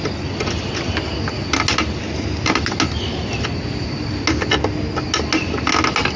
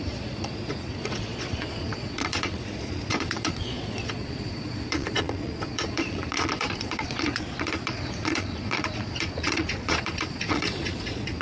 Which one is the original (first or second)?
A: first